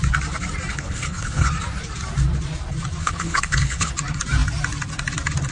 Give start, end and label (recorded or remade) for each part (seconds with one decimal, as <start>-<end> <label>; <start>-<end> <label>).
0.0-0.7 recorded; 0.7-1.5 remade; 1.5-3.0 recorded; 3.0-3.9 remade; 3.9-5.5 recorded